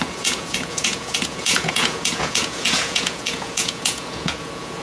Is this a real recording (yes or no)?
no